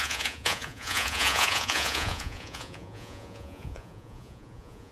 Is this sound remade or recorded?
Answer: remade